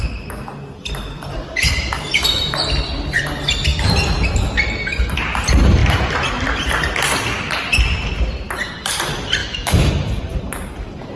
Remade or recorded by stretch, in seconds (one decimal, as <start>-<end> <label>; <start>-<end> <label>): 0.0-9.4 recorded; 9.4-9.9 remade; 9.9-11.2 recorded